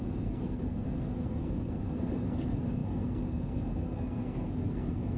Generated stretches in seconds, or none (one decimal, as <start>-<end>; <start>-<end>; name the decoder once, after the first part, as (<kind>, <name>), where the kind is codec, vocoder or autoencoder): 0.0-5.2 (codec, SNAC)